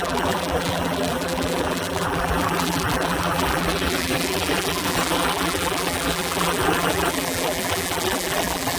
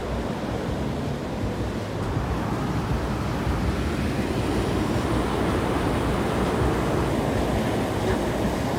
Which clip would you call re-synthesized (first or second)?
first